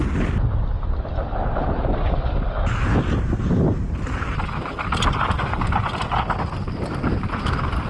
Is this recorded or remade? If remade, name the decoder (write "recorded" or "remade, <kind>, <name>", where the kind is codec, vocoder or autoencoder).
recorded